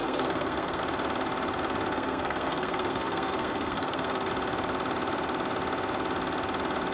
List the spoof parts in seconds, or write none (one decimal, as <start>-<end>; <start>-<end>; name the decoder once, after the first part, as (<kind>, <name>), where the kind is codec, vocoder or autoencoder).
0.0-0.8 (codec, SNAC); 1.9-4.3